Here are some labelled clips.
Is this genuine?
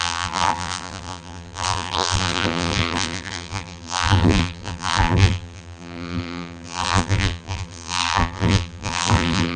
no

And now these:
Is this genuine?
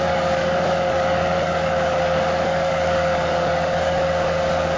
no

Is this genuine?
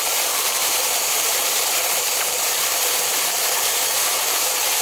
no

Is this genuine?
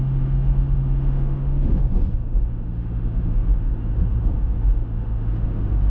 no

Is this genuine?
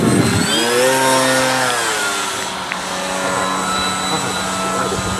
yes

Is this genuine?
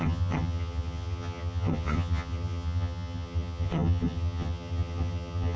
no